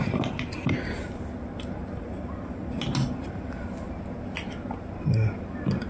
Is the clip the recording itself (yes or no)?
yes